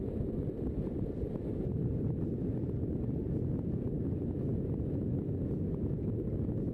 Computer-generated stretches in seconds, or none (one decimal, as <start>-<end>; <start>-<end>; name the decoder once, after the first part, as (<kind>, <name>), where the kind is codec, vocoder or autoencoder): none